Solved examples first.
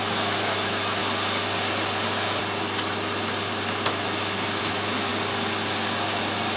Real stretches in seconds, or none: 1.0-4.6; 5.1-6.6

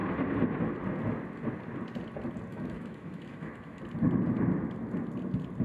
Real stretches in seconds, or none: 0.0-2.5; 3.8-5.6

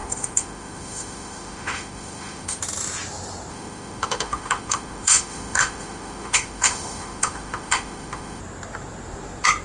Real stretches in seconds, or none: 2.6-3.5; 8.4-9.6

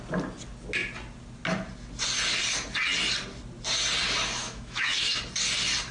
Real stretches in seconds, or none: 0.0-4.4; 5.2-5.9